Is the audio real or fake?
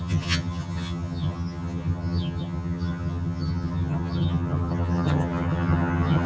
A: fake